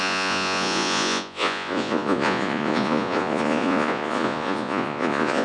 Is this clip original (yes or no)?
no